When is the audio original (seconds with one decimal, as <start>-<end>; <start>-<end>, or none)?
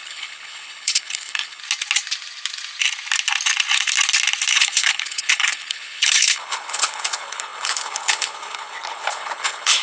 1.6-4.5